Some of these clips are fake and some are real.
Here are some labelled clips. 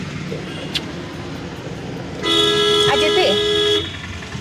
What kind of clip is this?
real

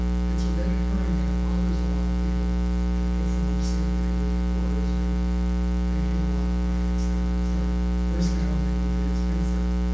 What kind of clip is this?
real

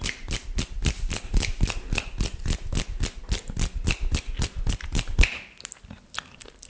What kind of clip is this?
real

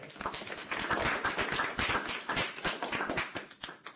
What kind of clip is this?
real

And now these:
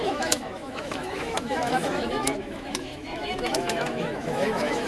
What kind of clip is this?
fake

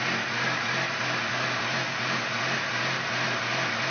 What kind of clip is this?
real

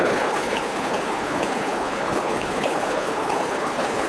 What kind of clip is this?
fake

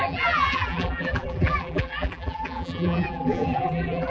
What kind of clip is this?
fake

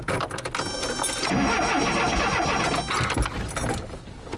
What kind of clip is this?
real